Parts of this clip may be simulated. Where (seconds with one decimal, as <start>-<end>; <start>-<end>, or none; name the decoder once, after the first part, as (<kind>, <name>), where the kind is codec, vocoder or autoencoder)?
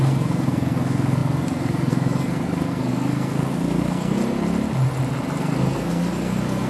0.0-4.2 (codec, SNAC); 5.4-6.7